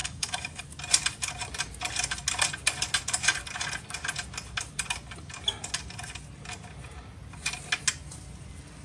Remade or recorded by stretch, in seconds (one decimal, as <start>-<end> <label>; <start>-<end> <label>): 0.0-0.6 remade; 0.6-8.8 recorded